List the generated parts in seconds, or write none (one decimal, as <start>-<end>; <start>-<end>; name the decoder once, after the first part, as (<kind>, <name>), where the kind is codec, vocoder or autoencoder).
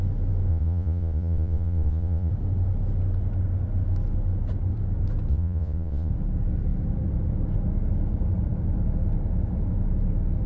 0.5-2.3 (vocoder, Vocos); 5.3-6.1